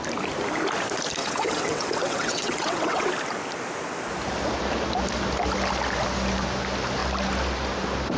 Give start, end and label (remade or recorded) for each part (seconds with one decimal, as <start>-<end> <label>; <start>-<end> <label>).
0.0-1.2 recorded; 1.2-3.1 remade; 3.1-8.2 recorded